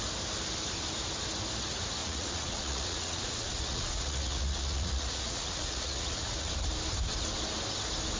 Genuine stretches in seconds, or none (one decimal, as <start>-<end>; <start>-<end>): 0.0-2.0; 6.5-8.2